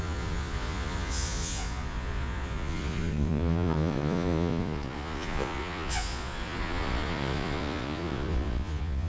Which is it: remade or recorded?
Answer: remade